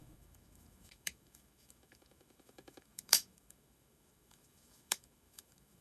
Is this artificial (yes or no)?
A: yes